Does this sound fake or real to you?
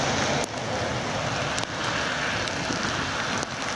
real